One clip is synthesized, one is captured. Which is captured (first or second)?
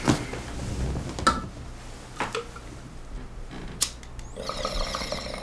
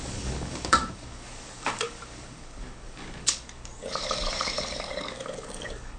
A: first